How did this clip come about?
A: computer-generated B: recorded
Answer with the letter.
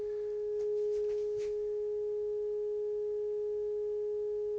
B